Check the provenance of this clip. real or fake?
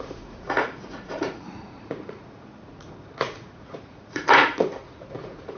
fake